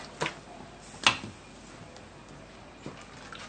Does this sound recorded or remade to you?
recorded